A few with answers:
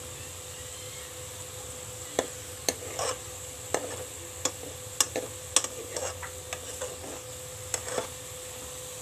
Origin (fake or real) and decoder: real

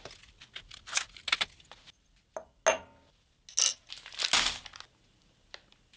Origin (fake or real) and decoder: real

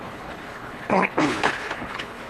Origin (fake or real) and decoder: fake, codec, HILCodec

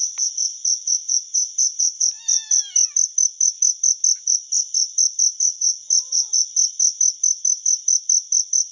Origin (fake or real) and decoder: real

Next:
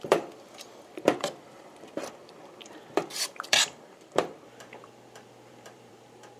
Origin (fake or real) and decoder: fake, vocoder, BigVGAN v2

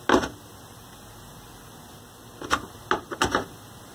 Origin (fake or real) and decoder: real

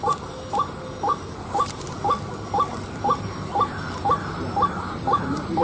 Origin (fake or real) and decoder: real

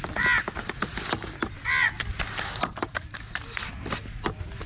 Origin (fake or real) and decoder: real